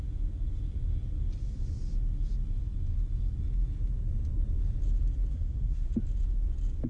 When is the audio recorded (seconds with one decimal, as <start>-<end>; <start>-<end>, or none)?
0.0-5.3; 5.9-6.9